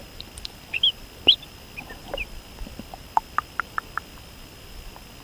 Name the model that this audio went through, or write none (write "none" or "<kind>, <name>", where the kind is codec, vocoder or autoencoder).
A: none